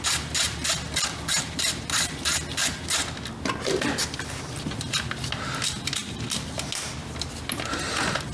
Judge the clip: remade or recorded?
recorded